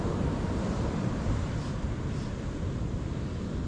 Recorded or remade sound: recorded